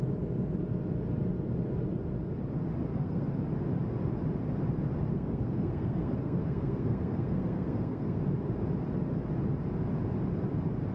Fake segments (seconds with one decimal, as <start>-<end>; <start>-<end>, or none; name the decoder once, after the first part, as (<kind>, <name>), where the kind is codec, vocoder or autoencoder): 2.9-3.4 (codec, SNAC); 5.1-8.2